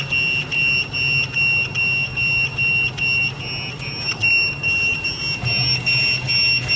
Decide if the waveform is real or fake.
real